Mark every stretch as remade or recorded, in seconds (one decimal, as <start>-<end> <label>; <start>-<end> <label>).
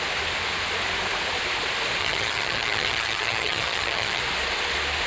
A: 0.0-2.0 recorded; 2.0-4.2 remade; 4.2-5.1 recorded